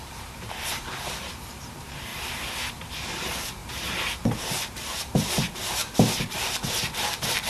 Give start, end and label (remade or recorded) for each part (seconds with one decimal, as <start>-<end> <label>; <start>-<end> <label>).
0.0-2.1 remade; 2.1-3.1 recorded; 3.1-7.5 remade